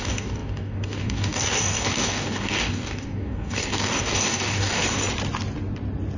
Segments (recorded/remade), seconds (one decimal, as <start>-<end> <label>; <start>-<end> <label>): 0.0-5.0 remade; 5.0-6.2 recorded